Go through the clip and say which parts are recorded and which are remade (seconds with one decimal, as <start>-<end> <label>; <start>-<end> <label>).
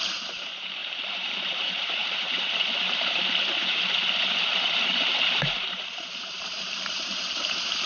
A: 0.0-7.9 remade